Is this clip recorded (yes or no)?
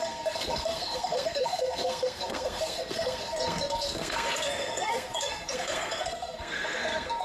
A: no